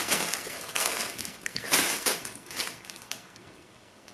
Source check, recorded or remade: remade